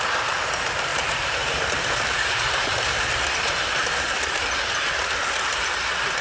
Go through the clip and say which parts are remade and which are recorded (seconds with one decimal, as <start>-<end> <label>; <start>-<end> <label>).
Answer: 0.0-0.9 recorded; 0.9-4.4 remade; 4.4-6.2 recorded